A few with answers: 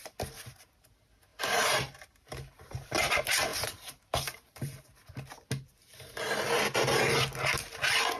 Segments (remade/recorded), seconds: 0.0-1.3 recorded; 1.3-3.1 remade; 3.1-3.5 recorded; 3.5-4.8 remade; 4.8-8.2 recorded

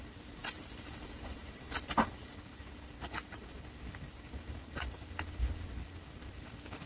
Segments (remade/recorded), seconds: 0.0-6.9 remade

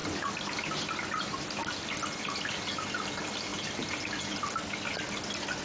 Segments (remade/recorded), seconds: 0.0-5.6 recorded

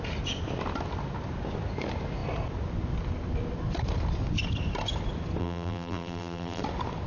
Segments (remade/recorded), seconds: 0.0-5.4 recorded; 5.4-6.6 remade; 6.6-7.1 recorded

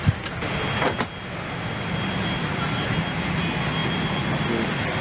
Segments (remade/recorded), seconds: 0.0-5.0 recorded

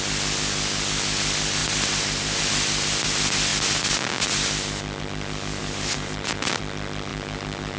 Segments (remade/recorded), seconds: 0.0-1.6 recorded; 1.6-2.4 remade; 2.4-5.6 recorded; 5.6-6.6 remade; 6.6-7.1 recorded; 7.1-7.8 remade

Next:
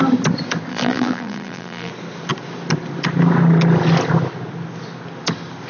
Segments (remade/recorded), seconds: 0.0-0.7 recorded; 0.7-1.9 remade; 1.9-5.7 recorded